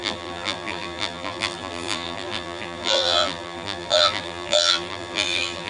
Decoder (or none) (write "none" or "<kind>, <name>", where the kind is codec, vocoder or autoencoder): vocoder, BigVGAN v2